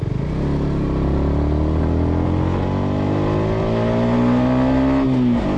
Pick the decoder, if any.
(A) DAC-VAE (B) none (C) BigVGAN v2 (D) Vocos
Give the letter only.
B